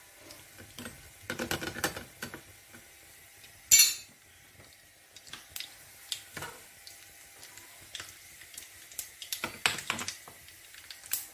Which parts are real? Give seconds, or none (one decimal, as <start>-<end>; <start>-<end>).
0.0-11.3